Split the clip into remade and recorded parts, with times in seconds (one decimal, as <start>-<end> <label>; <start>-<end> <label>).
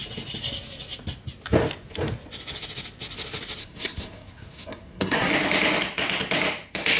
0.0-3.6 recorded; 3.6-5.3 remade; 5.3-7.0 recorded